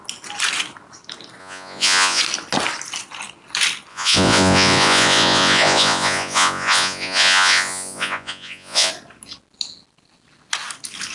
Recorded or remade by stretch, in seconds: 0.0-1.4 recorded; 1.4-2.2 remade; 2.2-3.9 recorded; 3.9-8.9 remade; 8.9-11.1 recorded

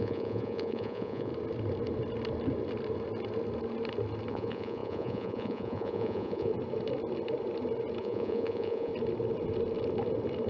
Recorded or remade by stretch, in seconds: 0.0-1.3 remade; 1.3-4.3 recorded; 4.3-6.5 remade; 6.5-8.0 recorded; 8.0-8.9 remade; 8.9-10.5 recorded